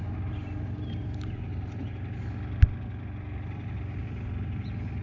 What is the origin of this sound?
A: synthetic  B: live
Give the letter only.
B